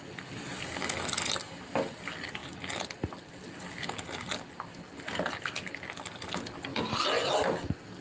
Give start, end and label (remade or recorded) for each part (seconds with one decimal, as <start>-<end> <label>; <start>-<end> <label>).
0.0-8.0 recorded